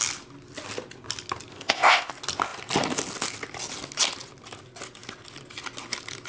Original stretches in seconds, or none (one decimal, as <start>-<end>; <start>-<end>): 0.0-1.5; 2.1-6.3